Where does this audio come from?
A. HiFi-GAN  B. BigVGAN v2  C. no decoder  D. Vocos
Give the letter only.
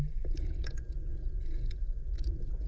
D